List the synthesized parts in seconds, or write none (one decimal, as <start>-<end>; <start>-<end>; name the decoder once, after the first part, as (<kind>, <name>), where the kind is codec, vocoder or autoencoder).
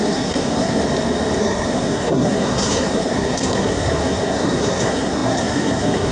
0.0-0.8 (codec, SNAC); 1.4-6.1